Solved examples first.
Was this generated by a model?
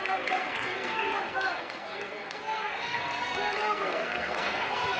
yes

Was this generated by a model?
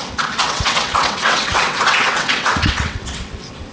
yes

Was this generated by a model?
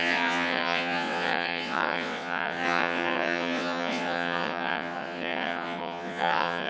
yes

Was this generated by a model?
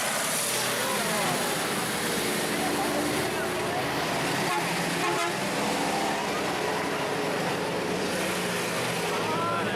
no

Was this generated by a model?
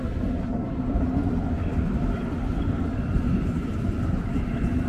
no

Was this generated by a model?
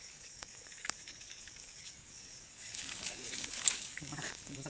yes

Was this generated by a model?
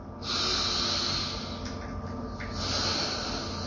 no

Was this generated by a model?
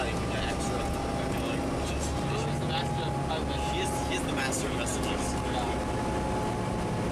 no